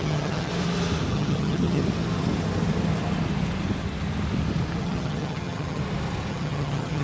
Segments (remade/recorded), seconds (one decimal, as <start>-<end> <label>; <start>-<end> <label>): 0.0-0.5 remade; 0.5-1.1 recorded; 1.1-1.8 remade; 1.8-4.8 recorded; 4.8-5.8 remade; 5.8-6.3 recorded; 6.3-7.0 remade